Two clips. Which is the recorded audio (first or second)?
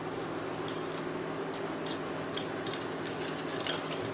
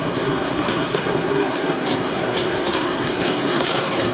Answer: first